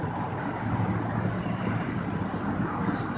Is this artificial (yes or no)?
no